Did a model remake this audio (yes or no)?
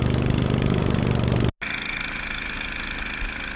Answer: no